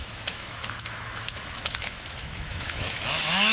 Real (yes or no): no